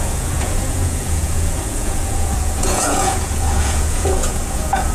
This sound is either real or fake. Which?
fake